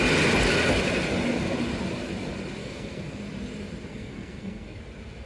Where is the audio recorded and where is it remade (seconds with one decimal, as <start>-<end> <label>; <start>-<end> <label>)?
0.0-2.6 recorded; 2.6-3.2 remade; 3.2-3.9 recorded; 3.9-4.8 remade; 4.8-5.3 recorded

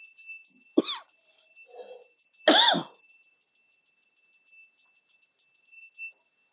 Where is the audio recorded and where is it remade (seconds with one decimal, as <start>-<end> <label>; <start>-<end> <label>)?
0.0-6.5 recorded

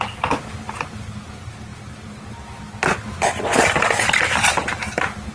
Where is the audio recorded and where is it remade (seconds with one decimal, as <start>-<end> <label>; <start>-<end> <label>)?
0.0-5.3 recorded

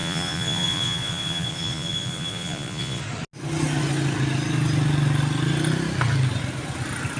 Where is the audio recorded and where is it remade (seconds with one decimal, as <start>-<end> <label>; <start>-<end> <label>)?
0.0-3.0 remade; 3.0-7.2 recorded

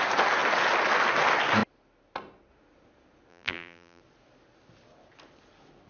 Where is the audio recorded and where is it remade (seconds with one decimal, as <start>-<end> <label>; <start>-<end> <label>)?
0.0-3.3 recorded; 3.3-4.0 remade; 4.0-5.9 recorded